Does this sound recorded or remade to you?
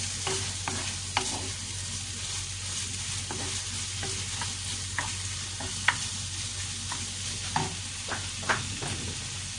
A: recorded